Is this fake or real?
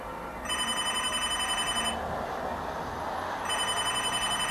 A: real